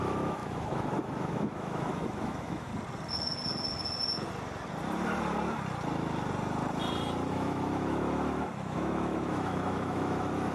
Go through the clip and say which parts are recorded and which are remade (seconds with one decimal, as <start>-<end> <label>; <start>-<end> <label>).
0.0-2.7 remade; 2.7-7.3 recorded; 7.3-10.5 remade